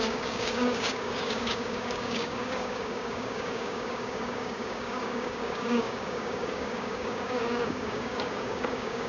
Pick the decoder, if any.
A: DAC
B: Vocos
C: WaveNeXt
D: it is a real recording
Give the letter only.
A